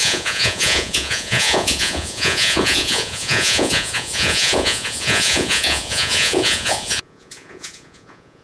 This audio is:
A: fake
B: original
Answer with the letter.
A